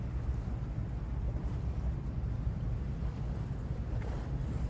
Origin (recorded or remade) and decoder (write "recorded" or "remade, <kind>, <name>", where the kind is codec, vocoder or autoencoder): recorded